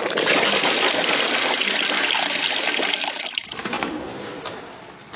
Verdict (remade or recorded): recorded